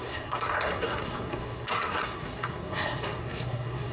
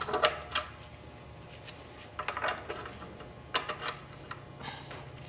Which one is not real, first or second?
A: first